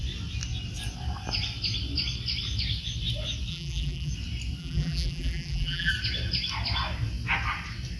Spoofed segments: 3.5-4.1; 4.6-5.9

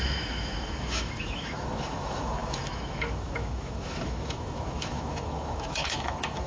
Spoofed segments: 0.0-6.5

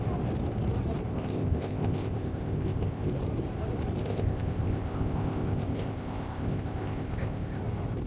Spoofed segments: 1.1-3.1; 4.0-7.6

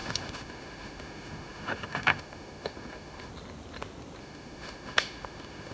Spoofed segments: 0.0-3.3; 4.2-5.7

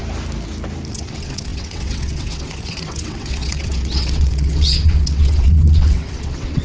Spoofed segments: 0.9-6.6